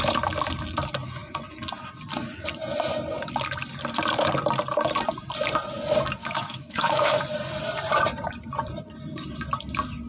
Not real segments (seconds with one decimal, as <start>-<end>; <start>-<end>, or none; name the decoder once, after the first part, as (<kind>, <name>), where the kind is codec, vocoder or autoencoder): 6.2-7.2 (autoencoder, DAC-VAE)